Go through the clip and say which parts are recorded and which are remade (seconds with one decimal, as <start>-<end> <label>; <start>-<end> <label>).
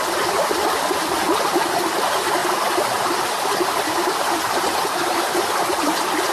0.0-6.3 recorded